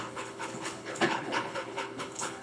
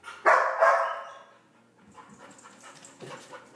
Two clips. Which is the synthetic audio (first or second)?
first